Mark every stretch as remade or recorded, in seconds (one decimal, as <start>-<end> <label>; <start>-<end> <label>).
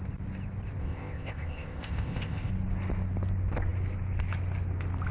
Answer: 0.0-0.8 recorded; 0.8-2.5 remade; 2.5-5.1 recorded